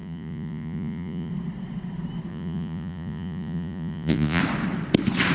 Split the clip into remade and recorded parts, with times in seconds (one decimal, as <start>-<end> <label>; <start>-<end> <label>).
0.0-1.3 remade; 1.3-2.3 recorded; 2.3-4.4 remade; 4.4-5.3 recorded